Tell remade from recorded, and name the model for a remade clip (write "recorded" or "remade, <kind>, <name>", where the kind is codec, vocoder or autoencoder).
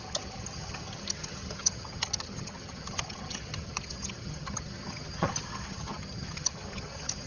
remade, vocoder, HiFi-GAN